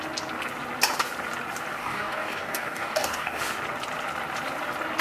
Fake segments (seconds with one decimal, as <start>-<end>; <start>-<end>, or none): 1.8-3.4